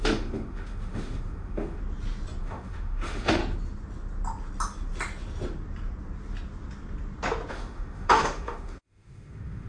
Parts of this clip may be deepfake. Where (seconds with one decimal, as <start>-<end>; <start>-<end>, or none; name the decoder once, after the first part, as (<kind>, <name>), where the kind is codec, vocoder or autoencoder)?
0.0-1.8 (autoencoder, DAC-VAE); 2.4-3.4; 7.5-9.7